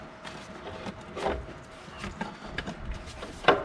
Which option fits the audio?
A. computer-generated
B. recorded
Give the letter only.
B